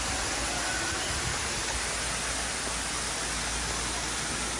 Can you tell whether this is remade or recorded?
recorded